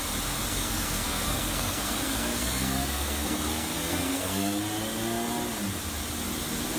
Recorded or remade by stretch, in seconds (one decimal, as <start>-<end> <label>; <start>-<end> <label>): 0.0-0.5 recorded; 0.5-4.6 remade; 4.6-6.8 recorded

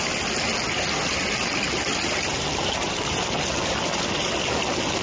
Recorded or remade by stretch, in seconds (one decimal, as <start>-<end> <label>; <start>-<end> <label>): 0.0-5.0 recorded